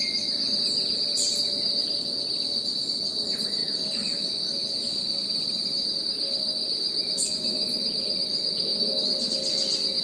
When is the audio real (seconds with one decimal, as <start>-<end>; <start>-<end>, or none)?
0.0-10.0